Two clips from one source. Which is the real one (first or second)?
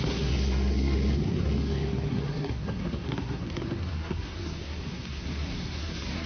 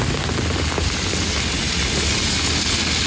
second